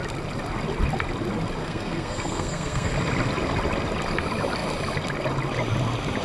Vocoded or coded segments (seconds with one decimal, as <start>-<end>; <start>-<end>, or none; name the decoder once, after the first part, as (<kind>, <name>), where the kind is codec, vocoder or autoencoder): 1.6-2.9 (codec, SNAC)